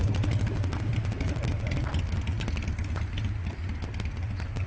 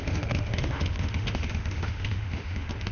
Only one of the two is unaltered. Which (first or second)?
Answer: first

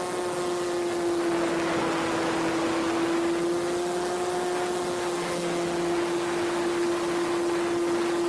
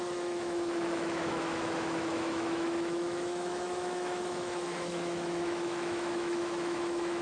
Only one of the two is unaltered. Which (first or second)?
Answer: first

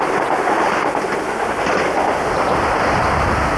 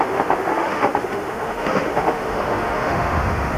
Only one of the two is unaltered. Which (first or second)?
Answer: first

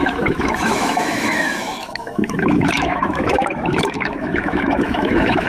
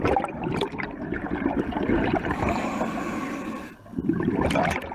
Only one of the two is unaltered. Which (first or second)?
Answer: second